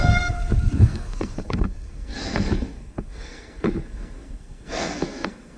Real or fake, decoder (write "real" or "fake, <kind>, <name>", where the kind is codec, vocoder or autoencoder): fake, codec, SNAC